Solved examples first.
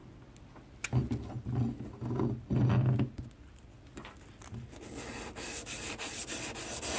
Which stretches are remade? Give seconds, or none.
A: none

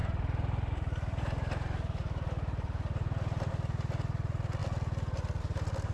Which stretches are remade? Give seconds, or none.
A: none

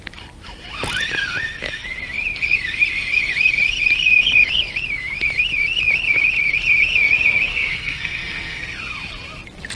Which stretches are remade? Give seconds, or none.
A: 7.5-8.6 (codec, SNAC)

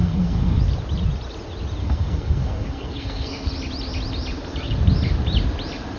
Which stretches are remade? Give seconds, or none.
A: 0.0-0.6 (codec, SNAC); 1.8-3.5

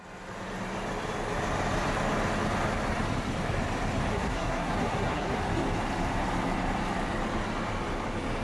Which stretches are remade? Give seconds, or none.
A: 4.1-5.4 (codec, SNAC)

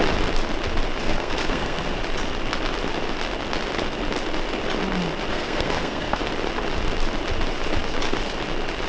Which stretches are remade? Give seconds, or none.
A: 1.0-2.0 (codec, SNAC); 5.3-6.2

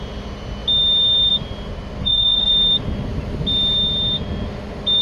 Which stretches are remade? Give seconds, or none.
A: 2.0-2.5 (codec, SNAC)